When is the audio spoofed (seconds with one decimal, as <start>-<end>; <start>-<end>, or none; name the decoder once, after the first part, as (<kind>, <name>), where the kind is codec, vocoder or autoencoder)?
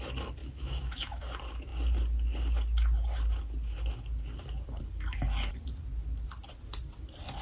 0.4-1.2 (autoencoder, DAC-VAE)